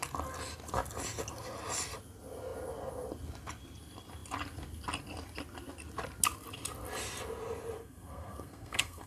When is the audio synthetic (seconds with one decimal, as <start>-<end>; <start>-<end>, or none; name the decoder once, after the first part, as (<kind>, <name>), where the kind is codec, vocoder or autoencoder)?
7.8-9.1 (codec, SNAC)